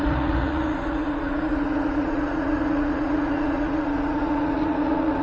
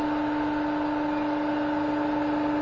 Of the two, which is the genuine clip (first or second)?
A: second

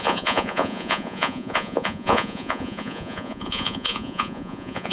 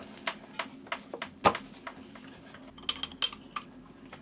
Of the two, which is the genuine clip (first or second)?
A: second